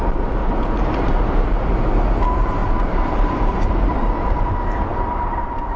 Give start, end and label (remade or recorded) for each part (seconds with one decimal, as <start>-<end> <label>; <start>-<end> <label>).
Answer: 0.0-0.4 recorded; 0.4-1.4 remade; 1.4-2.6 recorded; 2.6-4.5 remade; 4.5-4.9 recorded; 4.9-5.8 remade